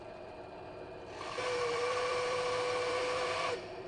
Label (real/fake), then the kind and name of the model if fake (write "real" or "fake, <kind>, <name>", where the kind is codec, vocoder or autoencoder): fake, vocoder, BigVGAN v2